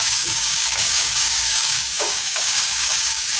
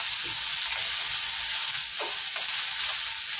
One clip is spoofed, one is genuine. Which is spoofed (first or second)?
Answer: first